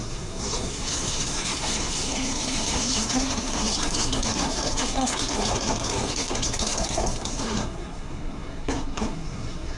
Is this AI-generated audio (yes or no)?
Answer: yes